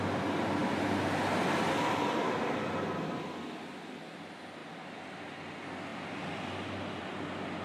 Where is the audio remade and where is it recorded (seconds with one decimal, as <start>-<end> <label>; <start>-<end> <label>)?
0.0-7.6 recorded